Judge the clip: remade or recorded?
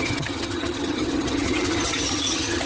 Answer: remade